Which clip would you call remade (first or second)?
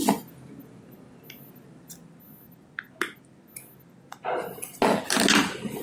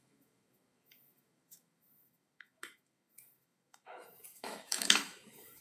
second